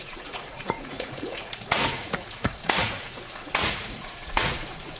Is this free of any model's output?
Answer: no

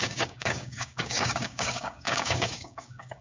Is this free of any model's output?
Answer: no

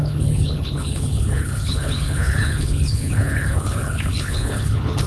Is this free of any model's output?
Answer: no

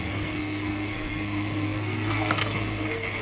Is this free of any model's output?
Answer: no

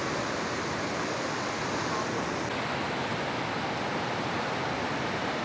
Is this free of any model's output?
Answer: yes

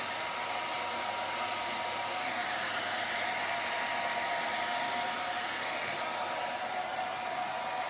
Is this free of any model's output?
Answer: yes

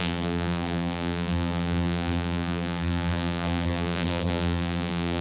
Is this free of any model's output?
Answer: no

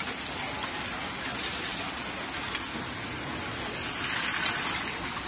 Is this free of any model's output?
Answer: yes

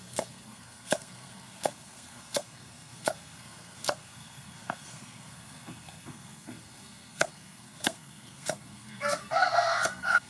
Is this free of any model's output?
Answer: no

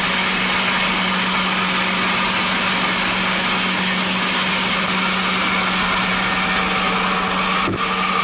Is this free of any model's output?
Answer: yes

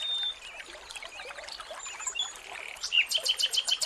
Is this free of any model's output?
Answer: yes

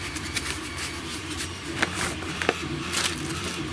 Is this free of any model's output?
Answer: no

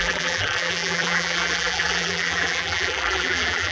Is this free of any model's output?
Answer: no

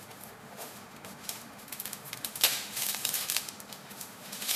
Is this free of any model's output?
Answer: no